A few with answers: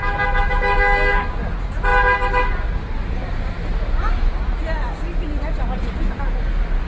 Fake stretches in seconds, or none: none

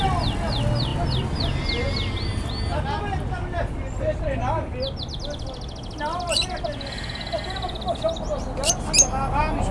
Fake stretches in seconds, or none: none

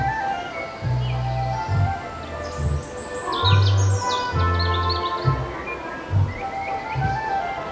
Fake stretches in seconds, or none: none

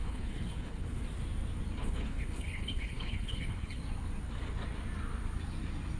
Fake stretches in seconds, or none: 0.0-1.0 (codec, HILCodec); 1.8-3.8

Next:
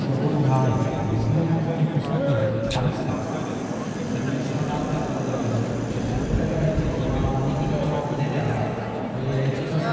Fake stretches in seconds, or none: 2.4-3.1 (codec, HILCodec)